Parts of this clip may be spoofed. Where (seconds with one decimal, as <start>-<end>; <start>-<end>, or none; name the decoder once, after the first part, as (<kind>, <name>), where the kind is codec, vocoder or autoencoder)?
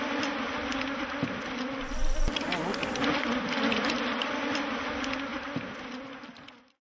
none